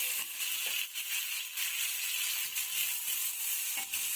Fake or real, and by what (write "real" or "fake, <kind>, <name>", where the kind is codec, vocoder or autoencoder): real